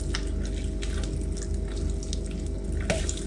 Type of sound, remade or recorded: recorded